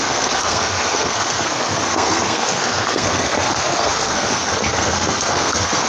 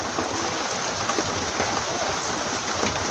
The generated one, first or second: first